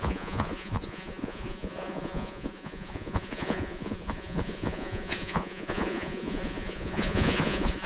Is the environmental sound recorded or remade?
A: remade